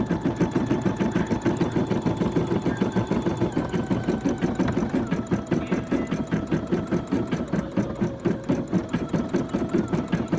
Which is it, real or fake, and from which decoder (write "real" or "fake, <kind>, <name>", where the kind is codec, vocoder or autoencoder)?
real